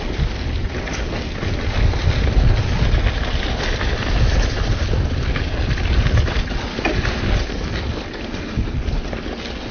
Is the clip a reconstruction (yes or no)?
no